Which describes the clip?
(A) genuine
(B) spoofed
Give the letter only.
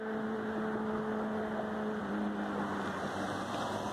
A